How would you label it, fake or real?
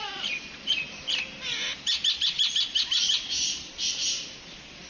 real